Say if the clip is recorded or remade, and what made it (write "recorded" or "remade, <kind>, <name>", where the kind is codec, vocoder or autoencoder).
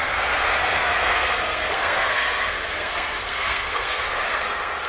remade, codec, SNAC